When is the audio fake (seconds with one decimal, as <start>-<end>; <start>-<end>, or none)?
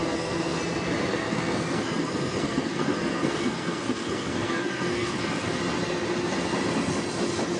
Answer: 0.0-0.6; 1.1-5.6